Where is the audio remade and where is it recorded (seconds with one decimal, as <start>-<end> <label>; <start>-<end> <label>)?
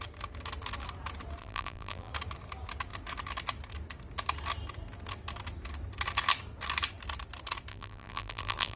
0.0-1.4 recorded; 1.4-2.1 remade; 2.1-7.7 recorded; 7.7-8.8 remade